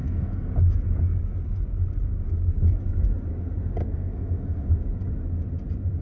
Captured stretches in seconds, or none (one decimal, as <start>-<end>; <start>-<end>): 0.5-3.8; 4.7-6.0